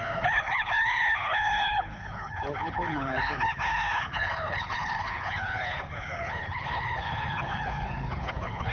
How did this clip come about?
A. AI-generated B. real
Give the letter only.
A